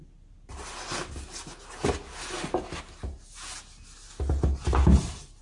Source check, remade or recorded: recorded